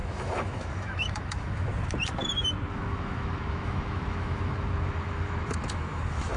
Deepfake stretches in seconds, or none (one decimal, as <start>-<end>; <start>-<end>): 0.0-1.7; 2.7-6.4